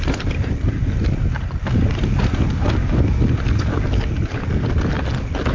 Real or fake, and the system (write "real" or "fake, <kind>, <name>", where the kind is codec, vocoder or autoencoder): real